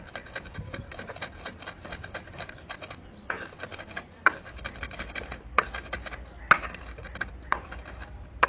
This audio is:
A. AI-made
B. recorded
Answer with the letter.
A